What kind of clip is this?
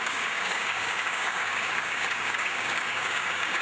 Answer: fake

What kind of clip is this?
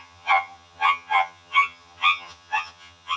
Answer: fake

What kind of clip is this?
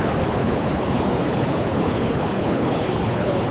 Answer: fake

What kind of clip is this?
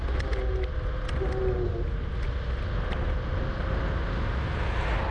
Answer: real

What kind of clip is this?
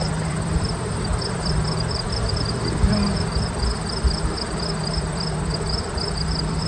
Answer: fake